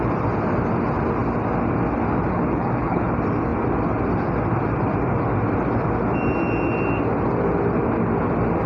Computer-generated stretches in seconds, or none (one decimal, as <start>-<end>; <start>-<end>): 2.3-3.1